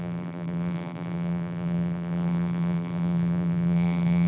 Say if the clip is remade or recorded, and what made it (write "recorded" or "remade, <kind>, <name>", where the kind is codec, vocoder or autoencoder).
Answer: remade, vocoder, BigVGAN v2